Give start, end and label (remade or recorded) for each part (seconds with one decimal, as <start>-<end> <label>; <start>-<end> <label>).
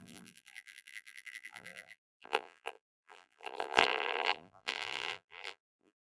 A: 0.0-6.0 remade